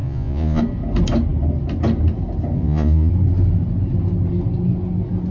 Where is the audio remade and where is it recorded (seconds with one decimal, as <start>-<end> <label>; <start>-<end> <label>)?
0.0-0.6 remade; 0.6-2.6 recorded; 2.6-3.1 remade; 3.1-5.3 recorded

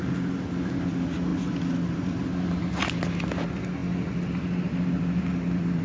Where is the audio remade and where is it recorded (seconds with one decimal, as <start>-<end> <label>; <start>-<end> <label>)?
0.0-5.8 recorded

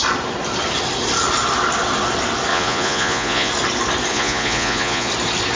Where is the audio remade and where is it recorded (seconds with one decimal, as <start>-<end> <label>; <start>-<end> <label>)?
0.0-2.5 recorded; 2.5-3.5 remade; 3.5-4.1 recorded; 4.1-5.1 remade; 5.1-5.6 recorded

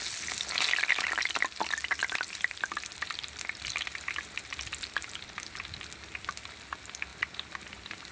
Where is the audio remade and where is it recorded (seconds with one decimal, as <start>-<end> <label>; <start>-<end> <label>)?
0.0-2.9 recorded; 2.9-4.5 remade; 4.5-8.1 recorded

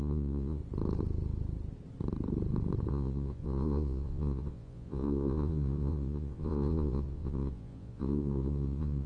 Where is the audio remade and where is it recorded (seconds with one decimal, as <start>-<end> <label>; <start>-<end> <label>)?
0.0-0.6 remade; 0.6-2.9 recorded; 2.9-9.1 remade

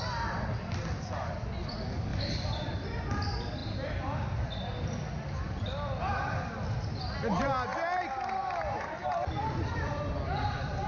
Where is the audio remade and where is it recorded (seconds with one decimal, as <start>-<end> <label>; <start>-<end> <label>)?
0.0-2.1 recorded; 2.1-3.2 remade; 3.2-3.6 recorded; 3.6-6.1 remade; 6.1-9.0 recorded; 9.0-10.9 remade

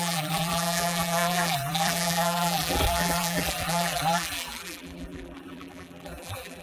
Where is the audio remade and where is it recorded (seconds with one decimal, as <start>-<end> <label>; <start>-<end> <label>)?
0.0-6.6 remade

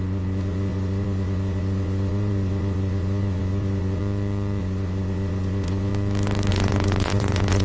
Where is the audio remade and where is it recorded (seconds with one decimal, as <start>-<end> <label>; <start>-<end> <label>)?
0.0-4.0 remade; 4.0-4.6 recorded; 4.6-5.9 remade; 5.9-6.5 recorded; 6.5-7.6 remade